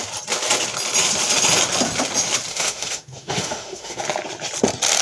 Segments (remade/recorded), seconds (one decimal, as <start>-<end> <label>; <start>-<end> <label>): 0.0-2.5 recorded; 2.5-4.0 remade; 4.0-5.0 recorded